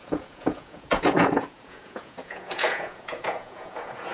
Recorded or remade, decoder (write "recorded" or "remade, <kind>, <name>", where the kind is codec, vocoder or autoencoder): remade, vocoder, Vocos